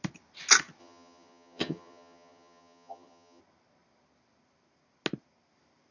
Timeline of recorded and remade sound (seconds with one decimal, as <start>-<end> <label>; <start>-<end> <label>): 0.0-0.8 recorded; 0.8-3.4 remade; 3.4-5.9 recorded